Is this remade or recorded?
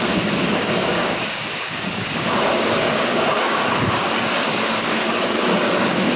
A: remade